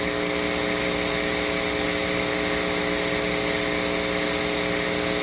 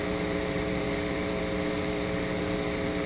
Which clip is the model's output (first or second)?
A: second